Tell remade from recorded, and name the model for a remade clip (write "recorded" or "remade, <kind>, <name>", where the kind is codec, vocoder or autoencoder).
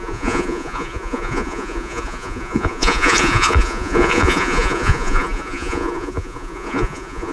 remade, vocoder, Vocos